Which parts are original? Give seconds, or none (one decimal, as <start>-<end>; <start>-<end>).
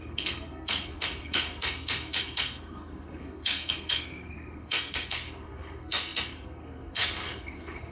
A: none